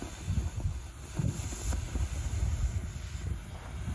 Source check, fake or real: real